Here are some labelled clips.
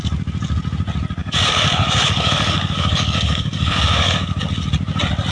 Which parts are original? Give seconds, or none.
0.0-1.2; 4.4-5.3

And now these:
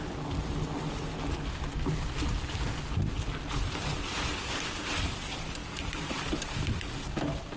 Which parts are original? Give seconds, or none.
0.0-7.6

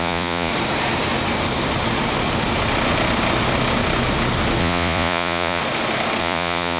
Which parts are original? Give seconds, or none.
0.5-4.6; 5.6-6.2

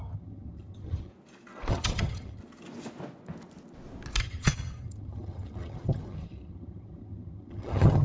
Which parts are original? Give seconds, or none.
1.1-1.7; 2.4-4.2

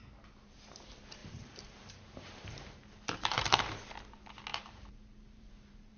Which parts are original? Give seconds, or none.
0.0-1.2; 3.6-4.5

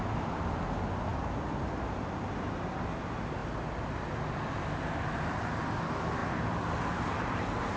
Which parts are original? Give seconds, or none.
0.0-6.2

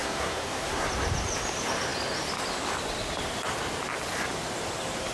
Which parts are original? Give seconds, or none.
0.9-5.1